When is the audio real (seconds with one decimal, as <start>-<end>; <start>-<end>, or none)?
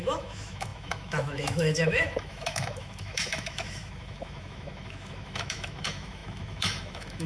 none